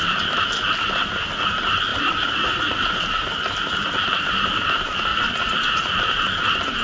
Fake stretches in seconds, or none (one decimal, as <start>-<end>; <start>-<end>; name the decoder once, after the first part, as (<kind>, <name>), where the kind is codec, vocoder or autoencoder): 1.9-3.0 (vocoder, Vocos); 5.1-6.0